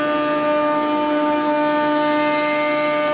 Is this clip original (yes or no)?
yes